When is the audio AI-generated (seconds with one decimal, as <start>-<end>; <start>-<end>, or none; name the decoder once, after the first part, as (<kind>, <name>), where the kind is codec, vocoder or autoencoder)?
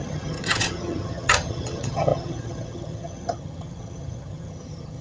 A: 0.0-5.0 (vocoder, HiFi-GAN)